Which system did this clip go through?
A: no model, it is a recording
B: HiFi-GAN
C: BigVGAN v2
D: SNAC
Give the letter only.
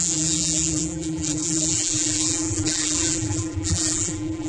C